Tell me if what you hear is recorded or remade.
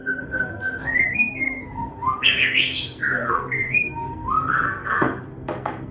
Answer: remade